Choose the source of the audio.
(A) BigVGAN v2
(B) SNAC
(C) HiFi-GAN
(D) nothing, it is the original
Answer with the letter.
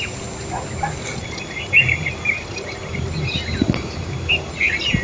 D